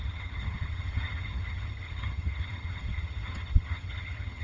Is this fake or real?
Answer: fake